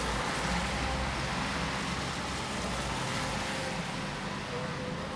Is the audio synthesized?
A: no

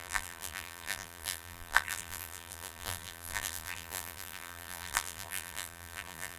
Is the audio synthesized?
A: yes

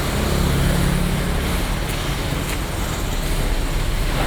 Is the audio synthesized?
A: no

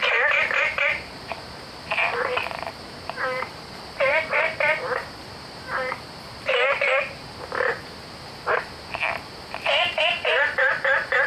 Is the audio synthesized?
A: yes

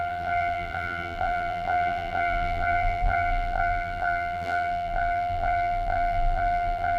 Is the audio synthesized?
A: yes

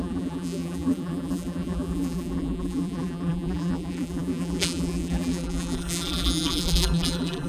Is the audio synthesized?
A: yes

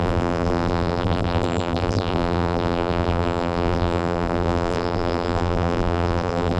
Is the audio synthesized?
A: yes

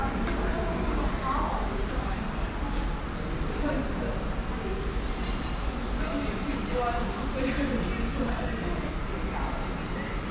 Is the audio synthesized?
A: no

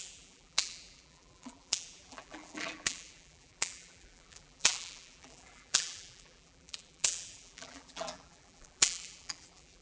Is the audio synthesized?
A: yes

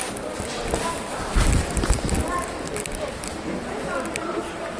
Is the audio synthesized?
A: yes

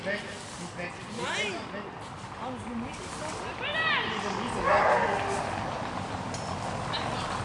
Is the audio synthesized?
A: no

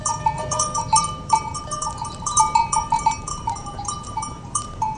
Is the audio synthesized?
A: yes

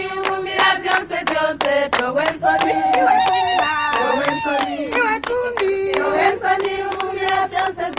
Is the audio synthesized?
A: no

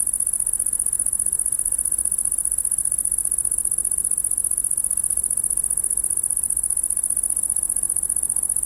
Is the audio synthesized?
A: no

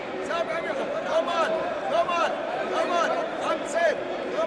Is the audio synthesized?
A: yes